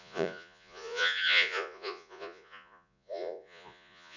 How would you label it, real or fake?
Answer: fake